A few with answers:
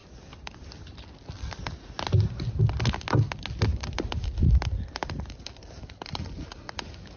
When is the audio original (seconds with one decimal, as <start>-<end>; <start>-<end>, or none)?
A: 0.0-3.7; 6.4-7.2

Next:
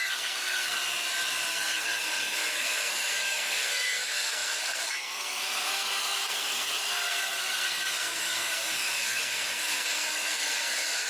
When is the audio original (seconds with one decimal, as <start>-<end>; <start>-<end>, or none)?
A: 0.8-1.5

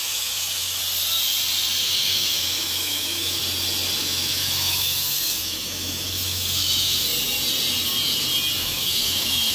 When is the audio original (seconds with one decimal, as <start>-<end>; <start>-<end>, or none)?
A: 0.8-1.8; 3.4-4.0; 7.1-8.6

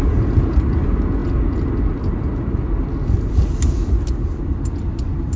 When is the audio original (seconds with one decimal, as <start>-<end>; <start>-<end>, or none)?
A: 0.0-5.4

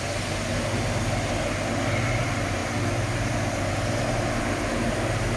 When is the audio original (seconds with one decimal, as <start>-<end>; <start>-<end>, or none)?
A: 0.0-5.4